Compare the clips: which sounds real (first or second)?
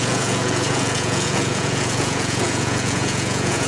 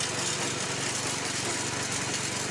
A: second